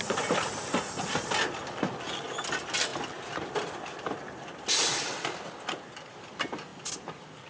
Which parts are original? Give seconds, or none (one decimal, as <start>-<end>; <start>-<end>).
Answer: 0.0-7.5